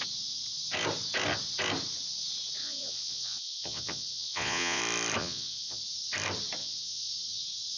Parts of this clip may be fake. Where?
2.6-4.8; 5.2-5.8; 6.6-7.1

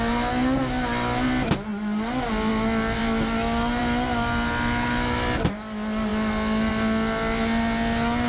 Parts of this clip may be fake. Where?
none

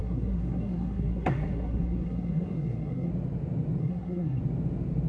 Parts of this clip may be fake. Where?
0.0-3.1; 3.8-4.4

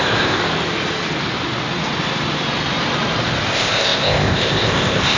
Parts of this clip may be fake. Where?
0.0-0.4; 3.5-5.2

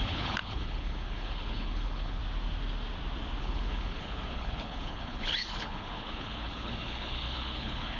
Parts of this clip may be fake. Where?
0.0-2.2; 3.4-8.0